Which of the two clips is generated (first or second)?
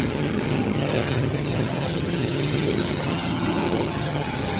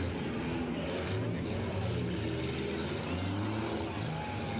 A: first